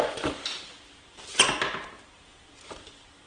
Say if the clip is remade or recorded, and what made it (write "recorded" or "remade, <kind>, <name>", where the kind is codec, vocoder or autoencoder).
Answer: recorded